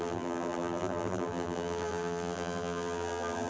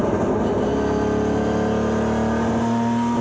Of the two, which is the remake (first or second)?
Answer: first